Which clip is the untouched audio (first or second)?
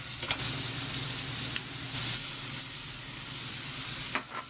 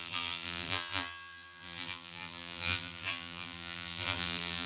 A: first